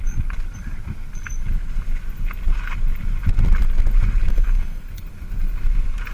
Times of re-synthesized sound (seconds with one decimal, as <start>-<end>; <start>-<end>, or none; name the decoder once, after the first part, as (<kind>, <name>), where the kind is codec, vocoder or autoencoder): 4.3-4.8 (codec, SNAC)